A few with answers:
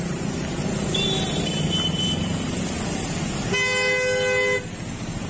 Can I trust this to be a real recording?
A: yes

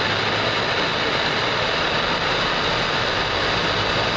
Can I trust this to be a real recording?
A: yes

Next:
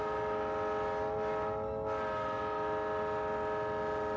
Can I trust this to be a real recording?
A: yes